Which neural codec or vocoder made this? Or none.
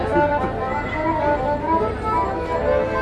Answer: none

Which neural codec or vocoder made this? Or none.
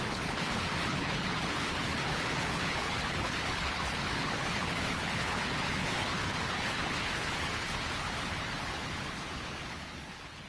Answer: codec, HILCodec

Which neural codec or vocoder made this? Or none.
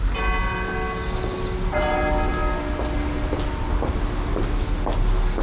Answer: none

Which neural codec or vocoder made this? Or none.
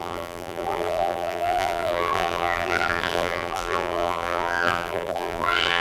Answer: vocoder, BigVGAN v2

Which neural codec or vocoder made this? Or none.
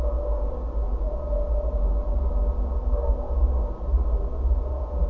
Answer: none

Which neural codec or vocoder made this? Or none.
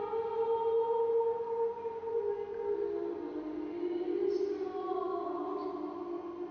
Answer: none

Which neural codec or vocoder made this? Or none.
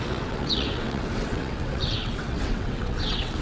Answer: vocoder, WaveNeXt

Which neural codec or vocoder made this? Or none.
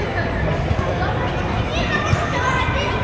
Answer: none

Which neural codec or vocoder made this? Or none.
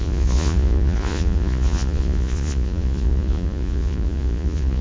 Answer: vocoder, Vocos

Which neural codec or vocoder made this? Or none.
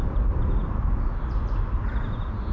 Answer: none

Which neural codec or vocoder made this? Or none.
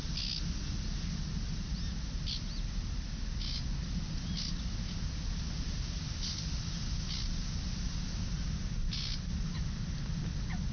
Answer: none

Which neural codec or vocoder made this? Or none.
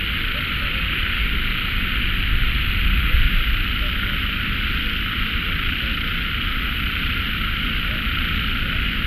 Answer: none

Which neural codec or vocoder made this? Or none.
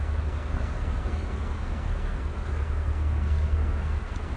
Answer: codec, SNAC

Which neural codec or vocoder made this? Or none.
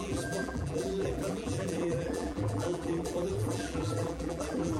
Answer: vocoder, BigVGAN v2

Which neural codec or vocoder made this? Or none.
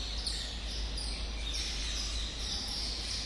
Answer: none